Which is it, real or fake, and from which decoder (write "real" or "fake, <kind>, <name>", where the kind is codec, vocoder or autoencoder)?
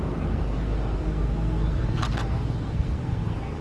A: fake, codec, SNAC